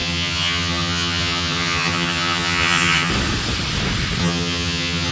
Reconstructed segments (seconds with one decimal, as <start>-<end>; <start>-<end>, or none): 0.0-3.1; 4.2-5.1